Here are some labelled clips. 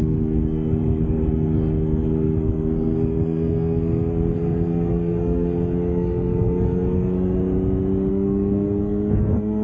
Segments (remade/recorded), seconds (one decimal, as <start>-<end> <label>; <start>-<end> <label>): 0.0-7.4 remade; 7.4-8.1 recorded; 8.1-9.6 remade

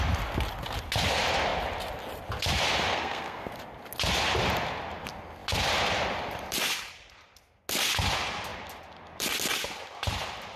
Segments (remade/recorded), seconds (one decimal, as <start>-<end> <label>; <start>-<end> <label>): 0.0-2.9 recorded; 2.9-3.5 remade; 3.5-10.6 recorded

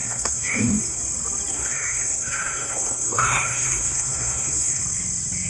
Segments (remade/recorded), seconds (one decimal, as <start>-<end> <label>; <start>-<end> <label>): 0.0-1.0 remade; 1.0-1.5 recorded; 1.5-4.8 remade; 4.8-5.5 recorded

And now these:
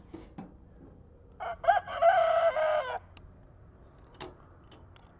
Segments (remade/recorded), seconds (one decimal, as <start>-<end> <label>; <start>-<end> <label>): 0.0-5.2 recorded

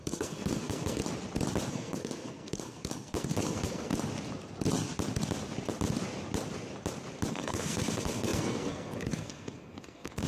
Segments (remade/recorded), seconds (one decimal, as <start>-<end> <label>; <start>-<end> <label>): 0.0-1.0 remade; 1.0-1.7 recorded; 1.7-3.9 remade; 3.9-7.3 recorded; 7.3-10.3 remade